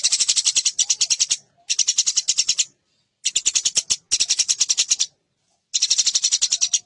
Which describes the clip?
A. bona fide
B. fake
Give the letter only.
A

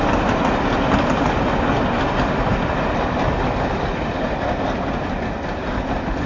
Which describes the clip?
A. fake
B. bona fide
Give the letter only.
B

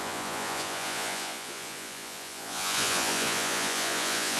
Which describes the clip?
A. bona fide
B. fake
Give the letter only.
B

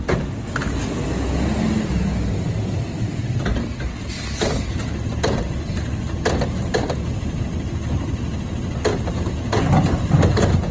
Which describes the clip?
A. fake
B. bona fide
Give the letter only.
B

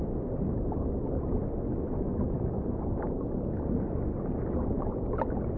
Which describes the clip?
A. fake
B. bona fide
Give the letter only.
B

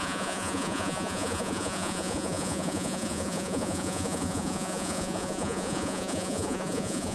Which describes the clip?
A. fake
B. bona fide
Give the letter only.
A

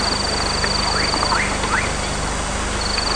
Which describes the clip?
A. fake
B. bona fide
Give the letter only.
B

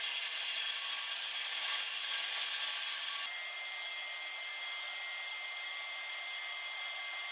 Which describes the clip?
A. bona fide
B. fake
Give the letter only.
A